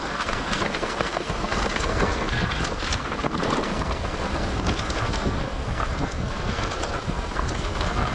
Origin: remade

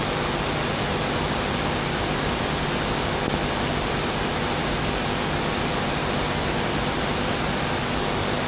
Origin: recorded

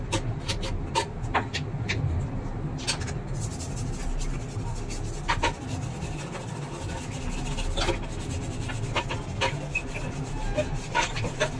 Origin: recorded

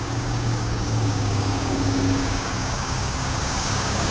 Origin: remade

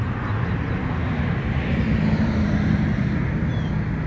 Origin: recorded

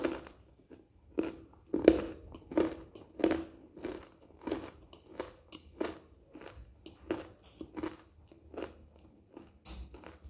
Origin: recorded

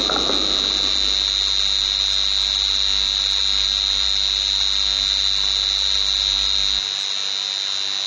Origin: recorded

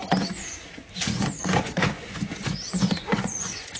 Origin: remade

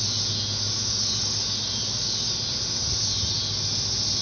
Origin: recorded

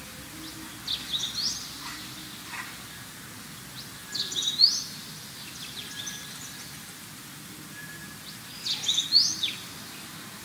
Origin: recorded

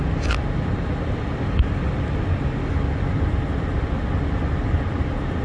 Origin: remade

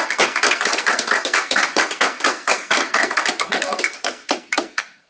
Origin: remade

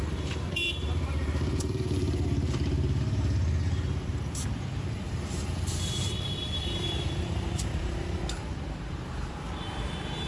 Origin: remade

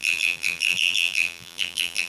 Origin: remade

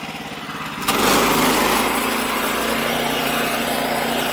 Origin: recorded